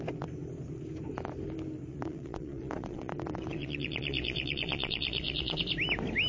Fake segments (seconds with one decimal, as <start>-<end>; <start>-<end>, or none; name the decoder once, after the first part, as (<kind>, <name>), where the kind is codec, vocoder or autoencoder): 1.9-5.6 (vocoder, Vocos)